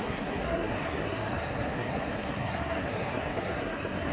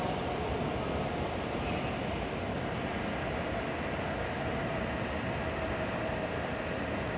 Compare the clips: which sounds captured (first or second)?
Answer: second